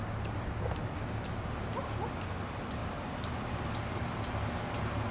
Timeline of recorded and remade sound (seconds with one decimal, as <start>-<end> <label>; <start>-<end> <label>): 0.0-2.8 recorded; 2.8-4.0 remade; 4.0-5.1 recorded